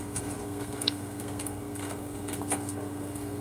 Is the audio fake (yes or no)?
yes